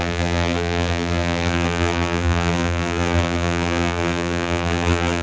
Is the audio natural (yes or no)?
no